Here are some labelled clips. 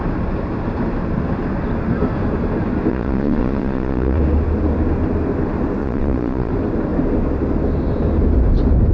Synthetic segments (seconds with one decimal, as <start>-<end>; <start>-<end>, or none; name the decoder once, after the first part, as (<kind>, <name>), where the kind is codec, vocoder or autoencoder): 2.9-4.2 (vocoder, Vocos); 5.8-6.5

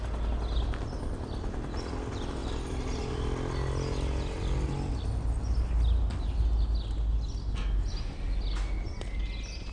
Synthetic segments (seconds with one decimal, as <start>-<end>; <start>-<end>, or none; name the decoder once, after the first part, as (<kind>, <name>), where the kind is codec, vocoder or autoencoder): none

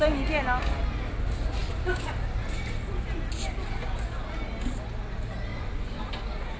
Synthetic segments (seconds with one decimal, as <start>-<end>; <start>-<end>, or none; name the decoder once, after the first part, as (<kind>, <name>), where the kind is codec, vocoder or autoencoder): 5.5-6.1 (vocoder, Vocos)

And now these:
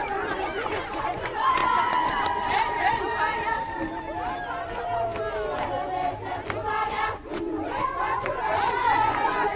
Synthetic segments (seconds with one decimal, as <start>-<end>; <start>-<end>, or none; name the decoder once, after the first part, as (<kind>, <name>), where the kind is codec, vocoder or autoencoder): 0.0-1.6 (vocoder, Vocos); 2.5-3.1; 6.9-9.6

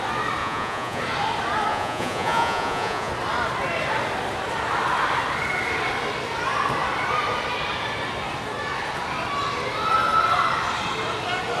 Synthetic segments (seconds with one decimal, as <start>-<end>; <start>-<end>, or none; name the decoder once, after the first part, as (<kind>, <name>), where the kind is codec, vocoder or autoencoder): 0.4-1.0 (vocoder, Vocos); 1.7-3.1

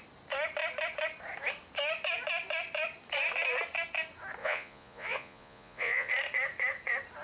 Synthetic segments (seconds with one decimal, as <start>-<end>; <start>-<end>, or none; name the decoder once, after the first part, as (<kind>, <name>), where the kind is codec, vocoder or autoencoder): 4.4-6.1 (vocoder, Vocos)